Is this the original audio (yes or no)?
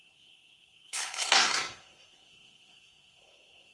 no